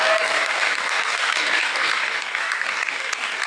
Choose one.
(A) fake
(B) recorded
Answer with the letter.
A